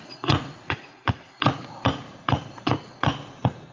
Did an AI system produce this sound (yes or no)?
yes